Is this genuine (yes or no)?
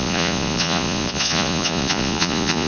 no